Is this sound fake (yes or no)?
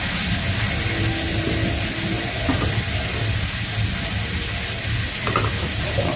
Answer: no